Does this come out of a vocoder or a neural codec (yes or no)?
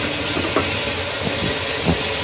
no